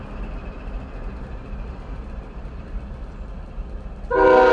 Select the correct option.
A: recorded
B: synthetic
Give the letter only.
A